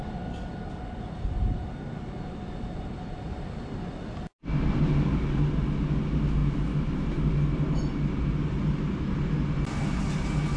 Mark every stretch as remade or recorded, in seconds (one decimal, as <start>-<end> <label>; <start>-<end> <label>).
0.0-10.6 recorded